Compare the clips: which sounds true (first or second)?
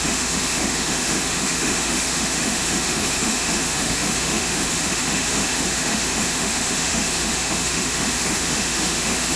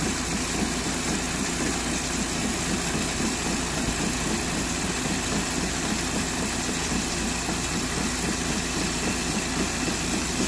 second